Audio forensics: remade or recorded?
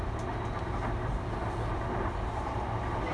recorded